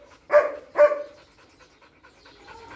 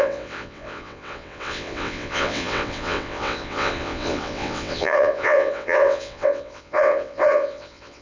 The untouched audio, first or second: first